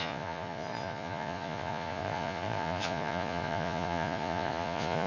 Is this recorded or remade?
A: remade